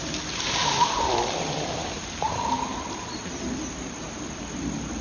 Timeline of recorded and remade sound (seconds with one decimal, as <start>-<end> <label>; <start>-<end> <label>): 0.0-5.0 recorded